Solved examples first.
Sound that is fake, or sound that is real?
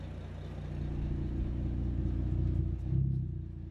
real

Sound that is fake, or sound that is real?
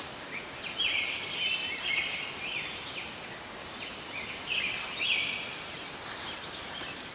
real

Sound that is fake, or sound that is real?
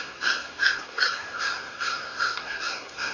fake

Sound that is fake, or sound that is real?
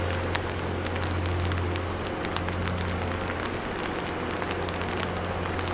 real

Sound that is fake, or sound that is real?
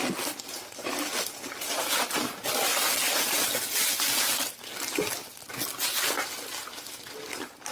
real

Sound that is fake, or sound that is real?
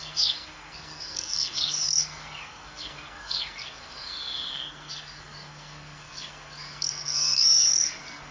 fake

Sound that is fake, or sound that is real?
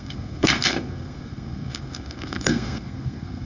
fake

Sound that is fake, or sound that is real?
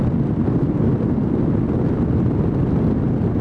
real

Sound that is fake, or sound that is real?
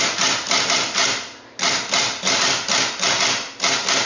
real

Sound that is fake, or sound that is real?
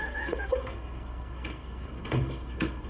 fake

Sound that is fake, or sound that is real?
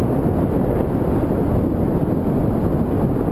real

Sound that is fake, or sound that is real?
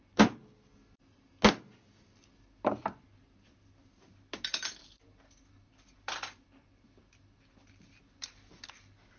real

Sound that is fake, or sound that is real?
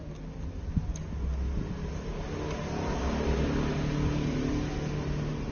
real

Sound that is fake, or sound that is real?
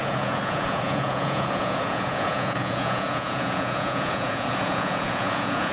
fake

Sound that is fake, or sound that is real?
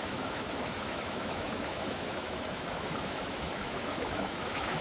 fake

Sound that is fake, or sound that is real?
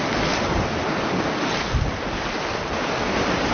real